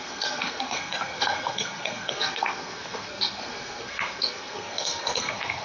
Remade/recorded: remade